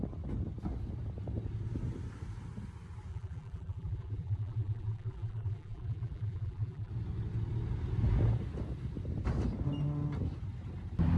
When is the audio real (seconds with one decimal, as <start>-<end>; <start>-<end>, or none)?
0.0-3.1; 6.9-11.2